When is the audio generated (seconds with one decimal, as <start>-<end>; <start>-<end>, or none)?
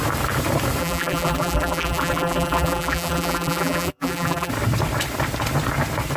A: 0.8-4.5